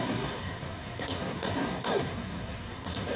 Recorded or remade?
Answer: remade